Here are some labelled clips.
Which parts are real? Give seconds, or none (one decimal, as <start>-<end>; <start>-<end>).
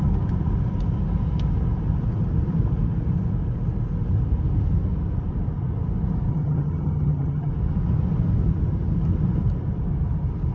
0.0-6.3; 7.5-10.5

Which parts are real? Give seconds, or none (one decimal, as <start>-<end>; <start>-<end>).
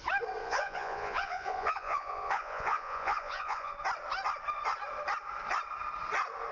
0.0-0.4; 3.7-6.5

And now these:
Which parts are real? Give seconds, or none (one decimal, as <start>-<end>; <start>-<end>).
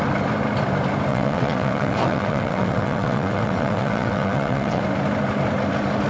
0.0-1.1; 4.8-6.1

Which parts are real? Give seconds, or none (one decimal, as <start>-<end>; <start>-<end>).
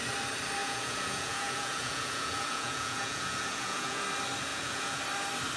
0.0-0.6; 4.0-4.5; 5.0-5.6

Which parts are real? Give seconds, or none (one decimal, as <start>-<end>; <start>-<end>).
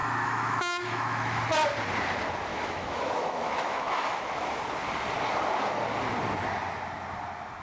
1.4-2.5; 4.6-7.6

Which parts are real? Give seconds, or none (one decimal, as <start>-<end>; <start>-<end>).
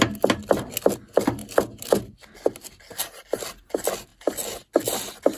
0.0-5.4